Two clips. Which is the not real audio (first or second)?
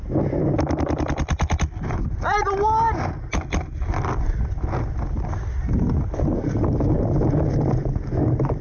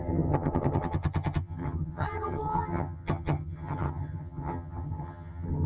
second